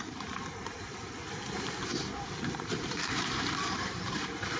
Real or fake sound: fake